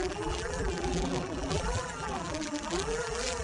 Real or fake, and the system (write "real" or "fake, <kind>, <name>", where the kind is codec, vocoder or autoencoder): fake, vocoder, BigVGAN v2